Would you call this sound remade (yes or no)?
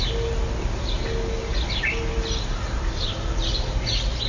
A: no